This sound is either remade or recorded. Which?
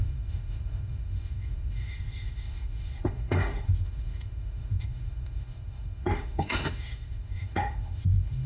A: remade